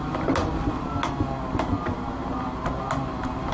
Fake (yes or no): no